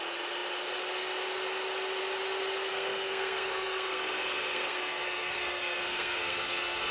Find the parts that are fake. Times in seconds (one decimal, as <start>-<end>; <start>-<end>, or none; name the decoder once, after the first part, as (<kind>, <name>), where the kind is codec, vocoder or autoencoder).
2.7-6.9 (codec, SNAC)

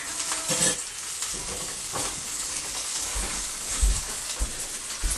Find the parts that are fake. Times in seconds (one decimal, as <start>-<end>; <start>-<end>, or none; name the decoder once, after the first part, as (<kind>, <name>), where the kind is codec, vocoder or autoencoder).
1.3-4.4 (codec, DAC)

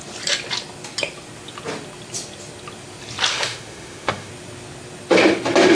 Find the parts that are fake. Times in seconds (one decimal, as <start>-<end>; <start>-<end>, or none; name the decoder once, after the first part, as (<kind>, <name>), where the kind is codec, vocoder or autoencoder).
3.3-4.3 (autoencoder, DAC-VAE)

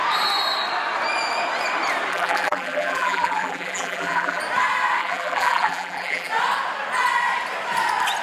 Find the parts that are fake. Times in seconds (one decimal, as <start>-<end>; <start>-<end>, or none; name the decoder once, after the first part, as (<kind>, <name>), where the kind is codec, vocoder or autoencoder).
2.1-4.4 (vocoder, BigVGAN v2); 5.0-6.3

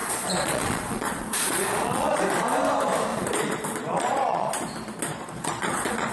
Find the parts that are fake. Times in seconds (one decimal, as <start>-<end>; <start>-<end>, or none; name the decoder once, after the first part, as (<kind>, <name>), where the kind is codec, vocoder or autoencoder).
0.0-2.2 (vocoder, Vocos); 3.1-4.5; 5.1-6.1

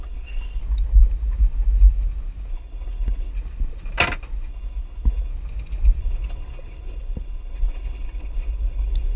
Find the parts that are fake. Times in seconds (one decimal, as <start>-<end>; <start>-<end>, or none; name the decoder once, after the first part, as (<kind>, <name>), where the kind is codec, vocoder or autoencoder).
0.0-0.6 (codec, HILCodec); 2.5-3.3; 4.5-5.3; 6.0-9.2

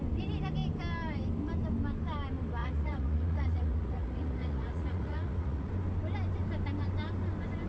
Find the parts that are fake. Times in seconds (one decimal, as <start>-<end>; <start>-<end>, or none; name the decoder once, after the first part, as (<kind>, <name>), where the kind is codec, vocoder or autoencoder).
2.6-5.7 (vocoder, Vocos)